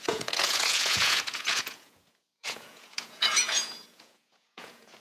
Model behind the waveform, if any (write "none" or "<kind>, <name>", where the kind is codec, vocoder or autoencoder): vocoder, Vocos